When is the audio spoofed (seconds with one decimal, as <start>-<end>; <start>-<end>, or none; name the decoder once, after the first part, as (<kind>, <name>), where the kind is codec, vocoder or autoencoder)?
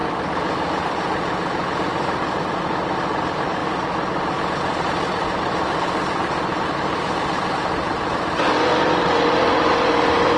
6.5-8.6 (vocoder, BigVGAN v2)